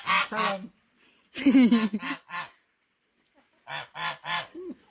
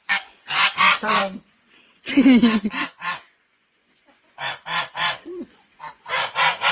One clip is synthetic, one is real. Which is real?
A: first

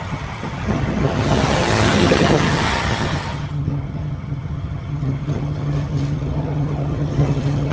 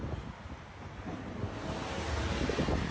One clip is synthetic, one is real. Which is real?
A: second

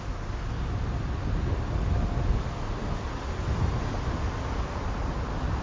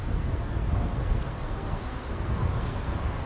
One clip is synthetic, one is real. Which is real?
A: first